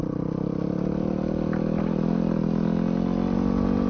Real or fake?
real